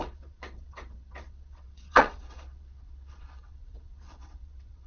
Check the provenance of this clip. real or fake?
fake